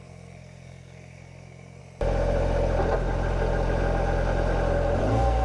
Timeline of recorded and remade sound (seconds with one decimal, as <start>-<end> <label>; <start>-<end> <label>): 0.0-1.8 remade; 1.8-5.0 recorded; 5.0-5.4 remade